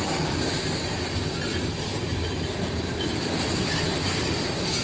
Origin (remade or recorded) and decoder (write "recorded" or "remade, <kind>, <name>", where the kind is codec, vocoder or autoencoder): recorded